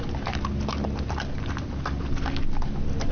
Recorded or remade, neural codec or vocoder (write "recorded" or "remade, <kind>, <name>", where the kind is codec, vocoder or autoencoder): recorded